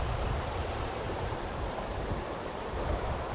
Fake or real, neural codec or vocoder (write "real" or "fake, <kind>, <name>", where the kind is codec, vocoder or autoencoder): fake, vocoder, BigVGAN v2